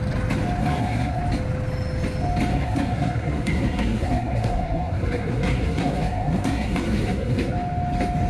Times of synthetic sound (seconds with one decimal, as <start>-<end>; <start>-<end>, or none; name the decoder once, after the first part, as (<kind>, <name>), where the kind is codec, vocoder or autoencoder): 0.6-1.2 (codec, SNAC); 2.5-7.5